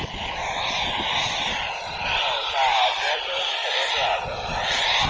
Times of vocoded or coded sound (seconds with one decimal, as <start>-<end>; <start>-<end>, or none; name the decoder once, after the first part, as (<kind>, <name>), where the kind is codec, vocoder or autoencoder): none